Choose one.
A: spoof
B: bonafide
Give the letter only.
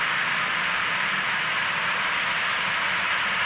B